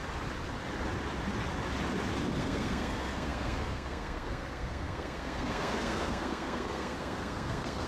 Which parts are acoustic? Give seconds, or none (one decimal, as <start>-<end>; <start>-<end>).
0.0-2.4